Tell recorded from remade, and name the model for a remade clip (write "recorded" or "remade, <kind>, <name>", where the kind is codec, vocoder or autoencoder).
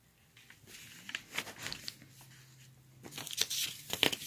recorded